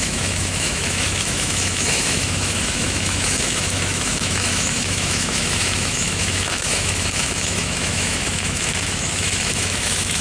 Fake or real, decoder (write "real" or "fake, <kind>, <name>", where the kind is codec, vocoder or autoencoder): fake, autoencoder, DAC-VAE